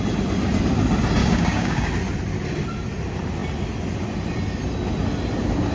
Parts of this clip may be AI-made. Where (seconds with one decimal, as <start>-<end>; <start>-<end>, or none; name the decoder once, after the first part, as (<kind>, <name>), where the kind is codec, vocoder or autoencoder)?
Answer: 1.2-1.9 (codec, DAC)